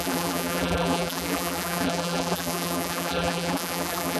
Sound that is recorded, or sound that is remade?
remade